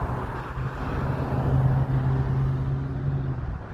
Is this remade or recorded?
recorded